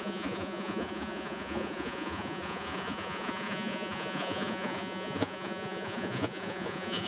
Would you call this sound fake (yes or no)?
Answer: yes